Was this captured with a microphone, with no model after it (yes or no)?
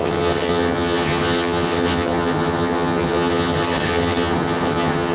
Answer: no